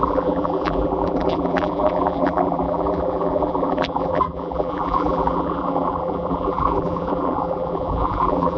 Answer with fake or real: fake